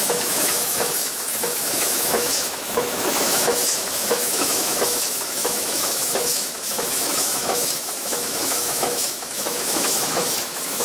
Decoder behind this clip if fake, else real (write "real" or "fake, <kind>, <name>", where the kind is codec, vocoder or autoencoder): fake, autoencoder, DAC-VAE